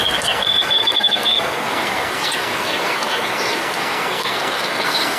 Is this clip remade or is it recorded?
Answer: remade